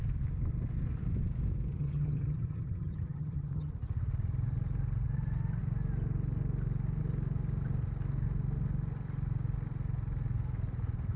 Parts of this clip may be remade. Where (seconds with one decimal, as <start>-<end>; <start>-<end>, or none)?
1.7-3.7